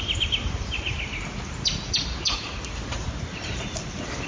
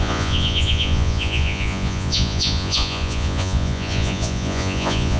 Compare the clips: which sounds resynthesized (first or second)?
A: second